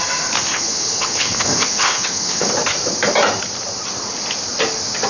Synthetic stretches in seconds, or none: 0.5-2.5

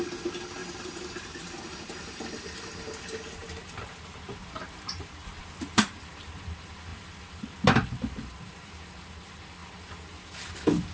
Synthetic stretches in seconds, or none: 0.6-2.1; 3.4-6.4

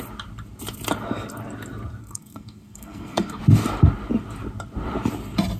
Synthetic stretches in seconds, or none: 2.0-3.4

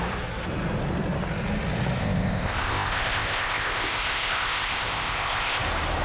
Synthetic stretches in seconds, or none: 2.0-5.6